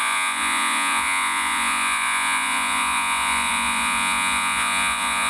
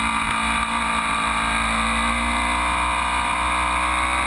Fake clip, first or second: first